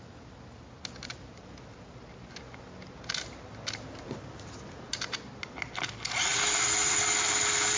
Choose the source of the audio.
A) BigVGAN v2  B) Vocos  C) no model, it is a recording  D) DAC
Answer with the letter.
C